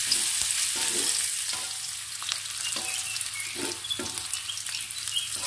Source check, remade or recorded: recorded